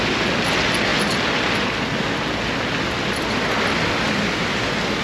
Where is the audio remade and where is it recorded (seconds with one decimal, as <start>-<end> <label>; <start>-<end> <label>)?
0.0-5.0 recorded